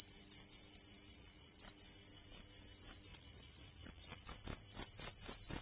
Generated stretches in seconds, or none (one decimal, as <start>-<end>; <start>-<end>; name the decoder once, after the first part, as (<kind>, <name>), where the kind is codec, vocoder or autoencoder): 1.1-1.6 (vocoder, Vocos); 3.1-4.3